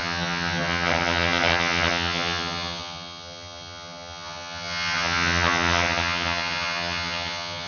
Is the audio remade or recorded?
remade